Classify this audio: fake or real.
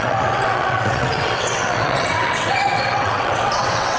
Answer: fake